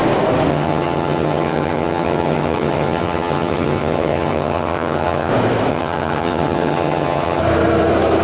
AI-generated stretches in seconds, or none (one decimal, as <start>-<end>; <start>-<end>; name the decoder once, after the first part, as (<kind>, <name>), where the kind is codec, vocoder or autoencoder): 0.5-5.3 (vocoder, HiFi-GAN); 5.7-7.4